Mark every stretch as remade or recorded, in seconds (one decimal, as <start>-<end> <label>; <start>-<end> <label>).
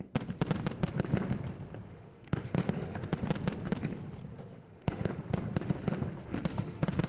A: 0.0-1.9 recorded; 1.9-3.2 remade; 3.2-4.3 recorded; 4.3-5.2 remade; 5.2-6.2 recorded; 6.2-7.1 remade